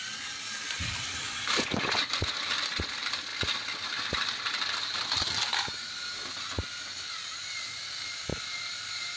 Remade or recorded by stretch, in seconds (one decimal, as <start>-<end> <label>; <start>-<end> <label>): 0.0-3.3 remade; 3.3-7.8 recorded; 7.8-9.2 remade